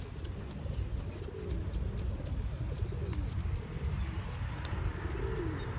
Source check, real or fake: real